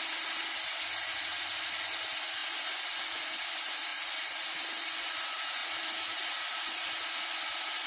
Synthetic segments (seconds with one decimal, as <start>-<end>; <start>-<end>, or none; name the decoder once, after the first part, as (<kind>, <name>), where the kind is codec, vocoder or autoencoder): none